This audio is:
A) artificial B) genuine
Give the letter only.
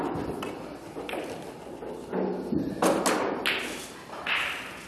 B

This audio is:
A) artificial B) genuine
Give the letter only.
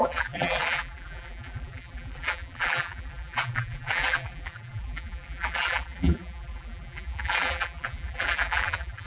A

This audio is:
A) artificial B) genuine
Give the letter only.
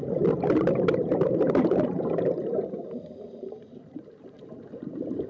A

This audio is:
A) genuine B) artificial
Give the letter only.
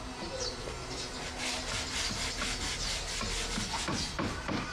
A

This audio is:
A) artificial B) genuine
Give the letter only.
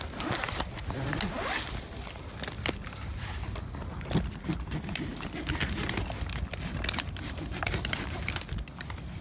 B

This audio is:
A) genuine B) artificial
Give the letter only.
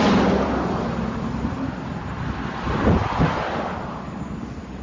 B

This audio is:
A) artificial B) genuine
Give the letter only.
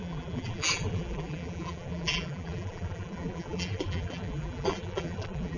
A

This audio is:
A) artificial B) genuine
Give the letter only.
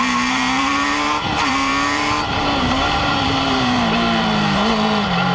A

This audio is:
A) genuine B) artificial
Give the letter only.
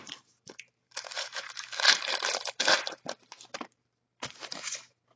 B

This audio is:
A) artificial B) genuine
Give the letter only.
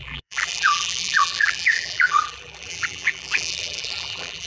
A